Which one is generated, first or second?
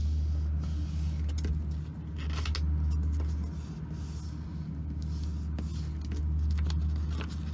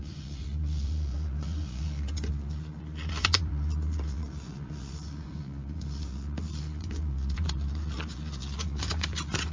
second